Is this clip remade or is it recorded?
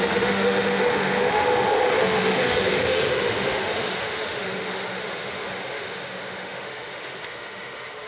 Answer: remade